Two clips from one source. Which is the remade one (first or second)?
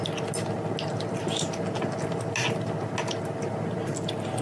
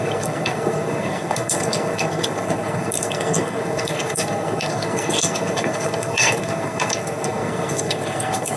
second